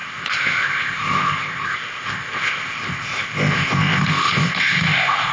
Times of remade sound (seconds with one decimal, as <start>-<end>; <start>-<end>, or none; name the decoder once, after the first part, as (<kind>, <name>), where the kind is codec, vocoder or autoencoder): 0.0-5.3 (codec, ZipCodec)